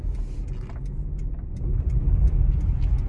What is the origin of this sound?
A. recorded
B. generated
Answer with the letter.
A